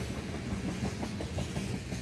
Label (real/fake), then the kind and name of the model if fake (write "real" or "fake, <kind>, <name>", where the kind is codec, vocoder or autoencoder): fake, vocoder, Vocos